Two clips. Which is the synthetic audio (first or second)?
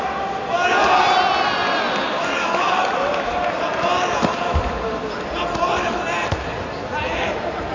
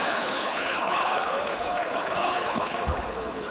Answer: second